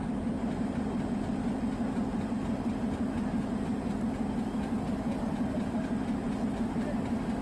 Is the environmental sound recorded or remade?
recorded